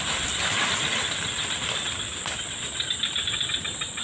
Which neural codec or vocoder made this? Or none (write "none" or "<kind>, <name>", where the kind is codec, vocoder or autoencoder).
none